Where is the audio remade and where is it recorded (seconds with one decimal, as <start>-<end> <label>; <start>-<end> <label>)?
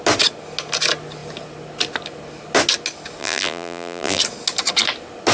0.0-3.2 recorded; 3.2-4.2 remade; 4.2-5.3 recorded